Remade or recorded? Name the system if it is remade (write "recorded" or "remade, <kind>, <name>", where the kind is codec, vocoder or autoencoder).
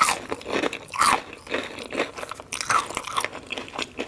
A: recorded